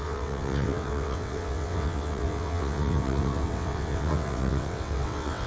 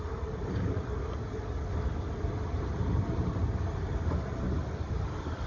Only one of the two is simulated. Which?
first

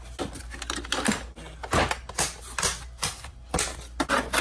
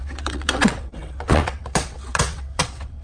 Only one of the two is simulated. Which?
second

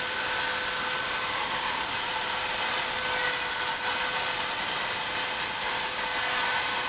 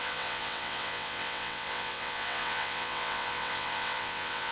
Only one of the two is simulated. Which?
second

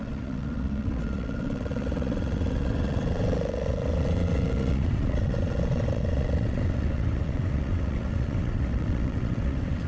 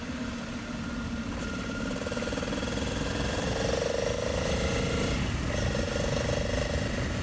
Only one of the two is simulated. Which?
first